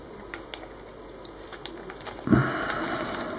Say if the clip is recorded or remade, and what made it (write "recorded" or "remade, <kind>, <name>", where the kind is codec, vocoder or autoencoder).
recorded